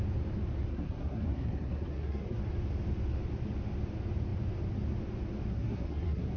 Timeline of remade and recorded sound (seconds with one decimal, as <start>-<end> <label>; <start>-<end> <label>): 0.0-0.7 recorded; 0.7-2.4 remade; 2.4-5.5 recorded; 5.5-6.4 remade